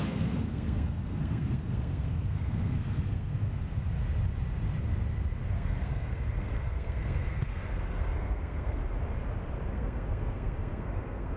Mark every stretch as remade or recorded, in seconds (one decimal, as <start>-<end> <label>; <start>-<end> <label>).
0.0-3.7 remade; 3.7-5.5 recorded; 5.5-8.8 remade; 8.8-9.7 recorded; 9.7-11.4 remade